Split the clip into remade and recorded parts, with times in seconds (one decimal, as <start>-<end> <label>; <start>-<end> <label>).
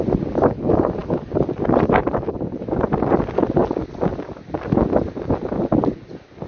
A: 0.0-2.0 recorded; 2.0-2.6 remade; 2.6-3.6 recorded; 3.6-4.1 remade; 4.1-6.5 recorded